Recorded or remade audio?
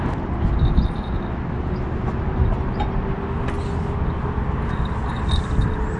recorded